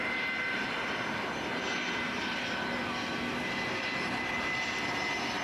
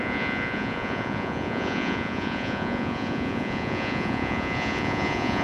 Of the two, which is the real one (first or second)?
first